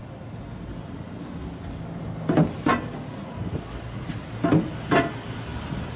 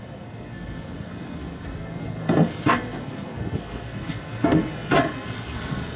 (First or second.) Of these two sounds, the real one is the first